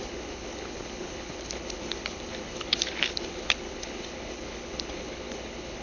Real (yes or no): no